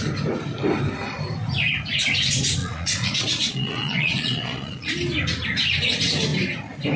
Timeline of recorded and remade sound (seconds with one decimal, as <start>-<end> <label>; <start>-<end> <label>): 0.0-2.6 recorded; 2.6-4.9 remade; 4.9-7.0 recorded